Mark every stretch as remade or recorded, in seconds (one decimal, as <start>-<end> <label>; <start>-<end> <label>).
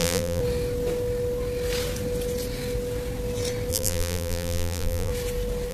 0.0-0.4 remade; 0.4-3.7 recorded; 3.7-5.1 remade; 5.1-5.7 recorded